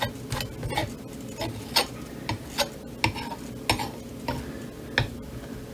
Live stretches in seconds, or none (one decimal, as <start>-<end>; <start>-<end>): 0.0-5.7